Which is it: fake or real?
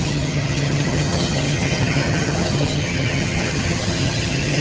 fake